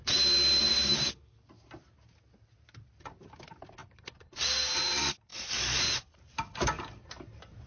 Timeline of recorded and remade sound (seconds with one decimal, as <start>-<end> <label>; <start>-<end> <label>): 0.0-0.6 recorded; 0.6-1.2 remade; 1.2-3.8 recorded; 3.8-4.7 remade; 4.7-5.3 recorded; 5.3-5.8 remade; 5.8-7.7 recorded